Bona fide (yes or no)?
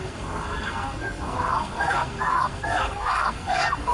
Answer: no